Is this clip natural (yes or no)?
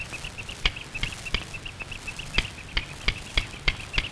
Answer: yes